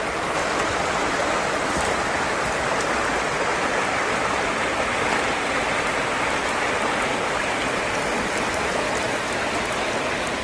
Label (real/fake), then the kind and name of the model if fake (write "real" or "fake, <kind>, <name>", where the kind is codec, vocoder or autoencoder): real